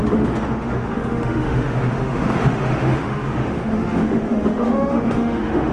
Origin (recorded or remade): remade